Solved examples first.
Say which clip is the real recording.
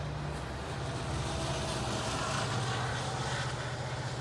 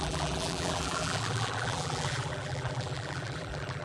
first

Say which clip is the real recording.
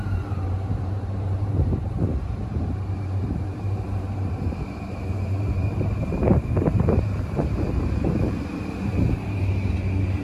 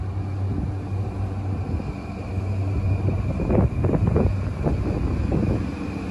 second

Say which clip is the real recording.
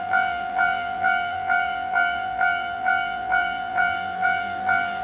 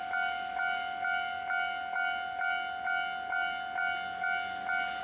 second